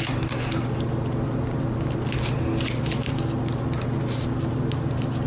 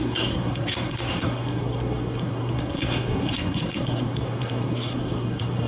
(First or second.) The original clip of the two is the first